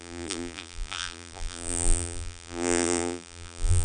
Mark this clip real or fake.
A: fake